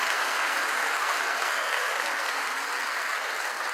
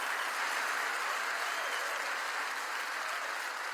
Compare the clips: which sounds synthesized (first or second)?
first